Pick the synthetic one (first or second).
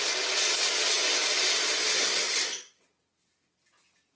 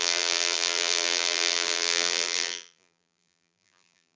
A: second